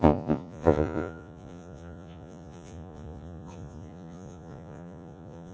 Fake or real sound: fake